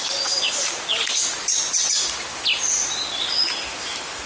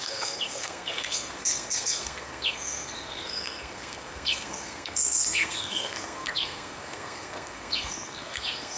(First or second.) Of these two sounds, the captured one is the first